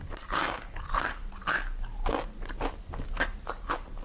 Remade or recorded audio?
recorded